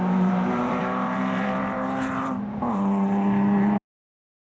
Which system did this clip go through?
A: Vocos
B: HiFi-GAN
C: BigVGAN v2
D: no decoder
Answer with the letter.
C